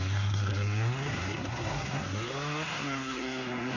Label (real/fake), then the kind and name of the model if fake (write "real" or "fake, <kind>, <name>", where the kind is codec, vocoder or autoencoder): fake, codec, SNAC